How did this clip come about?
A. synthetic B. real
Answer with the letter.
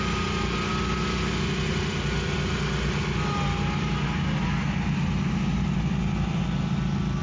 B